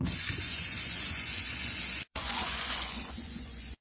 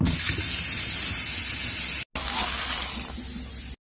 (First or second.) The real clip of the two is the second